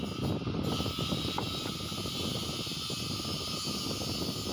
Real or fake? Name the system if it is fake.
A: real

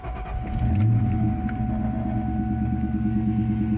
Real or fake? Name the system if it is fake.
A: real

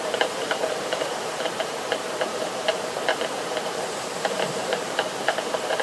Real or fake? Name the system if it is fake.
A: fake, vocoder, BigVGAN v2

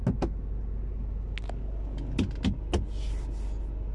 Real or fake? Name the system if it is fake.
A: real